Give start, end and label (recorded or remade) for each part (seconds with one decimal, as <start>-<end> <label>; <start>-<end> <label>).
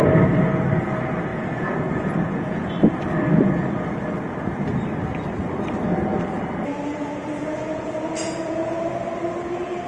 0.0-1.3 recorded; 1.3-2.7 remade; 2.7-6.9 recorded; 6.9-8.8 remade; 8.8-9.9 recorded